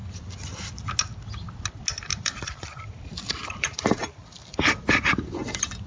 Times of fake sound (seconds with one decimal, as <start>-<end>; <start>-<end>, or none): 0.0-0.7; 2.1-5.9